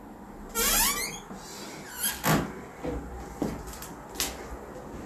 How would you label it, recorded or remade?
recorded